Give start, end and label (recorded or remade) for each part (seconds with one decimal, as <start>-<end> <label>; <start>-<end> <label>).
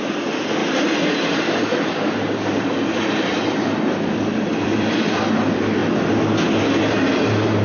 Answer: 0.0-0.6 recorded; 0.6-5.2 remade; 5.2-7.6 recorded